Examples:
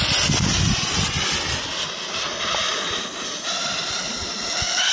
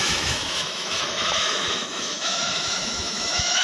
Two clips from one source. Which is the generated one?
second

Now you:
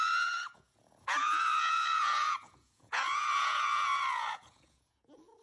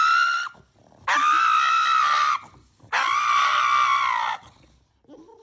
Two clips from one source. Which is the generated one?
first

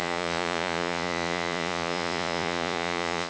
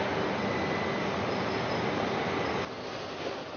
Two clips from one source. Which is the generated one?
first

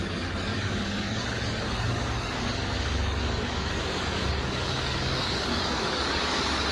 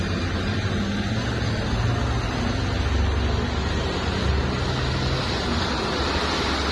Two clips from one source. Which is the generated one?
first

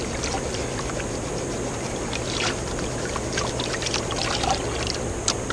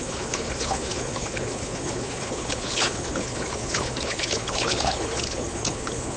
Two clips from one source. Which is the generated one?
second